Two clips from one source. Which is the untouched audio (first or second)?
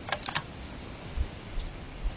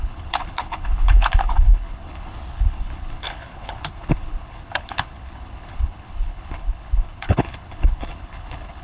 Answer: first